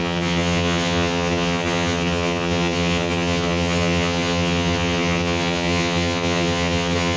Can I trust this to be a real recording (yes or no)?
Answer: no